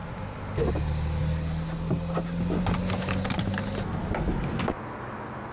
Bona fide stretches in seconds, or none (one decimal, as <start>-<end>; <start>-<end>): 0.0-5.5